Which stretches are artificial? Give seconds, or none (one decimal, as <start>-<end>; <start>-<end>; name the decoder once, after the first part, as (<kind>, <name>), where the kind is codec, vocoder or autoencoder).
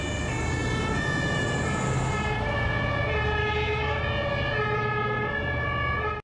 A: 3.4-4.0 (autoencoder, DAC-VAE)